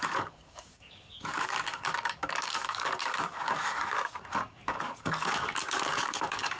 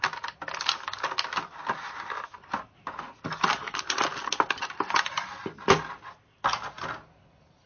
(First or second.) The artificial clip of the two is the first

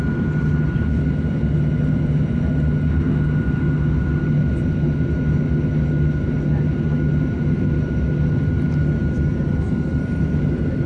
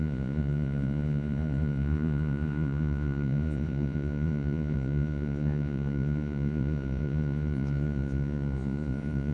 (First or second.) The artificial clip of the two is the second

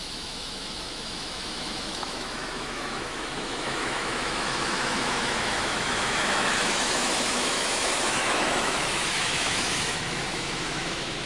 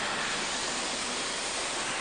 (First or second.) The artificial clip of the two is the first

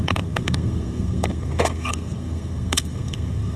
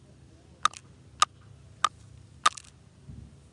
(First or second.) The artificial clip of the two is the first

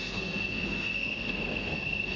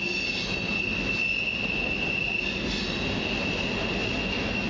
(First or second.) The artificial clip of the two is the first